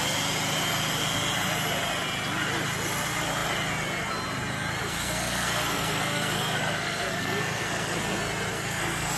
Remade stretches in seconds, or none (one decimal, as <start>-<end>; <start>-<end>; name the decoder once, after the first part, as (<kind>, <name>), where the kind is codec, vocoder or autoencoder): 4.8-8.0 (codec, SNAC); 8.5-9.2